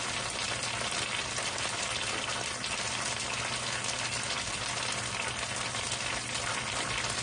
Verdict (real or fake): real